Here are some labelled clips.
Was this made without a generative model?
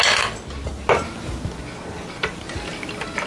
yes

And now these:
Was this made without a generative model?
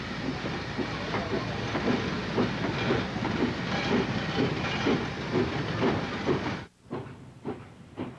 yes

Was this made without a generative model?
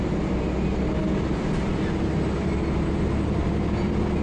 yes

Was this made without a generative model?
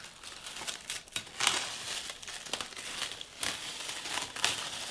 yes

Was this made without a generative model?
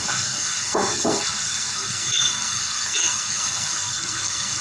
no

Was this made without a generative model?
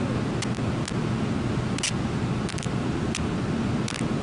yes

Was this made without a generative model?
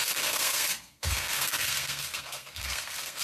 no